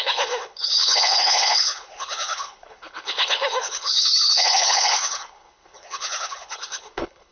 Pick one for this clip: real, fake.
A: fake